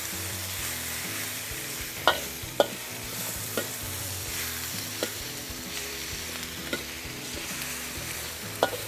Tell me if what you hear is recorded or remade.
remade